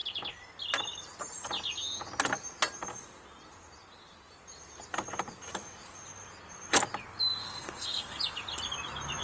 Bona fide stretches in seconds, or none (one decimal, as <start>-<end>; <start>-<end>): 0.0-7.4; 8.2-9.2